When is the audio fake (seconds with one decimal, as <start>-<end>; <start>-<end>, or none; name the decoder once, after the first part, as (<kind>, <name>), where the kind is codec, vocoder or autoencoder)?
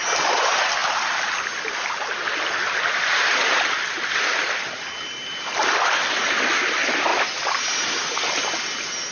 none